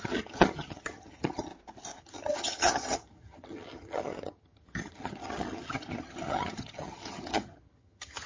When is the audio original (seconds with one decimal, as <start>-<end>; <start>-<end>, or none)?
1.5-2.0